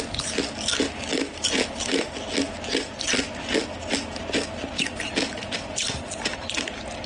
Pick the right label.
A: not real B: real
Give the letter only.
B